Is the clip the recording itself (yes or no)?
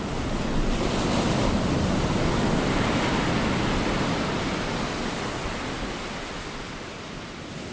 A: yes